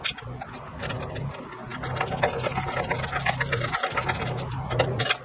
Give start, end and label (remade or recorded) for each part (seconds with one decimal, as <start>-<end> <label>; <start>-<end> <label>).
0.0-5.2 recorded